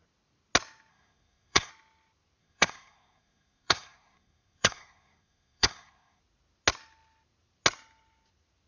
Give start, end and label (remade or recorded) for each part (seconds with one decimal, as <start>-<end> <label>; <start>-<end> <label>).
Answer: 0.0-0.9 recorded; 0.9-1.7 remade; 1.7-2.4 recorded; 2.4-6.2 remade; 6.2-8.7 recorded